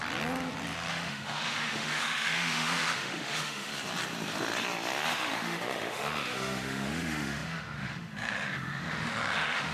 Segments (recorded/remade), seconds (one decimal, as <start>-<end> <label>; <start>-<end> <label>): 0.0-0.9 recorded; 0.9-3.7 remade; 3.7-5.1 recorded; 5.1-9.7 remade